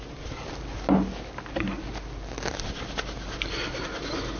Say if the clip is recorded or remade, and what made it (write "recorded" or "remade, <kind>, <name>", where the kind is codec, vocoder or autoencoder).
recorded